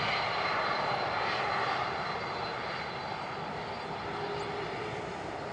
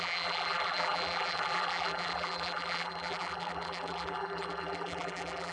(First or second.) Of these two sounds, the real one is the first